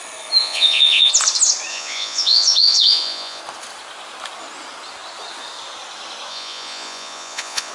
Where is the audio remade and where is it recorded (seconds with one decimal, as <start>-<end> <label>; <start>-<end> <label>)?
0.0-0.4 recorded; 0.4-1.1 remade; 1.1-1.7 recorded; 1.7-3.4 remade; 3.4-6.3 recorded; 6.3-7.7 remade